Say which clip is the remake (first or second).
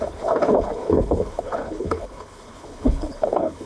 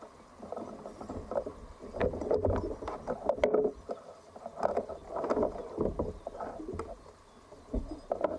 first